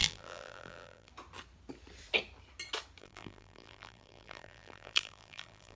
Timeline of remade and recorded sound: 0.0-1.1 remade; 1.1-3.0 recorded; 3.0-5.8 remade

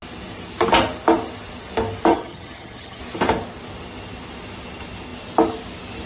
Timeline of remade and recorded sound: 0.0-2.1 recorded; 2.1-3.0 remade; 3.0-6.1 recorded

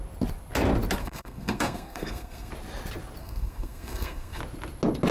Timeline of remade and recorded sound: 0.0-1.0 recorded; 1.0-2.5 remade; 2.5-3.2 recorded; 3.2-4.4 remade; 4.4-5.1 recorded